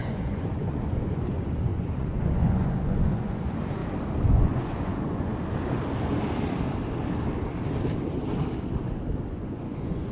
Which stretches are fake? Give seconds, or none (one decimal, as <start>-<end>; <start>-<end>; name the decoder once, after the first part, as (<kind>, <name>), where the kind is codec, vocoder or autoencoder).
0.0-3.8 (vocoder, Vocos); 4.3-5.3; 9.3-10.1

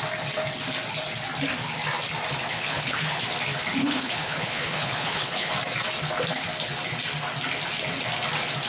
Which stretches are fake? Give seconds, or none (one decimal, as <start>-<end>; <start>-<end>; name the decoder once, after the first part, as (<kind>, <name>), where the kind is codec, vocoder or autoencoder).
2.5-3.2 (codec, HILCodec); 3.8-5.5

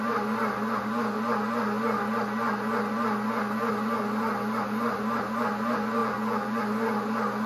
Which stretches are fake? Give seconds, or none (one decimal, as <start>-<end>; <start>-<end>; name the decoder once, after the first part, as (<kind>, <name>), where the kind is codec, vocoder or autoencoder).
6.0-6.6 (vocoder, BigVGAN v2)

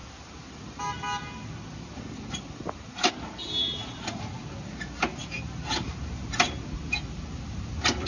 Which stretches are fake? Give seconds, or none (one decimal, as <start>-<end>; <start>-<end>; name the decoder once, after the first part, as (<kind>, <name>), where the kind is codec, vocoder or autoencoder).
none